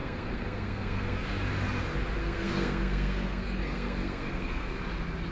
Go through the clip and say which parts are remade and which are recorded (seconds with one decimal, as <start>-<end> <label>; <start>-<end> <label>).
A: 0.0-1.3 remade; 1.3-2.2 recorded; 2.2-4.8 remade; 4.8-5.3 recorded